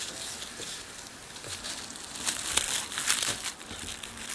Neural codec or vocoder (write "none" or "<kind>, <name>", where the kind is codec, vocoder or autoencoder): none